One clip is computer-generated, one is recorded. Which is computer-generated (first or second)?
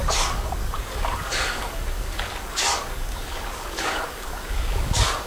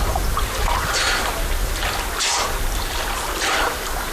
first